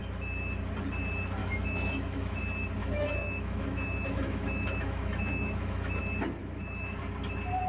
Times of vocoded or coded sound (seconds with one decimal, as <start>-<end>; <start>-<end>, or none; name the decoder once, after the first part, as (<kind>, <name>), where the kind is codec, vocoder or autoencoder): 1.4-2.4 (autoencoder, DAC-VAE); 2.8-6.0; 6.4-7.0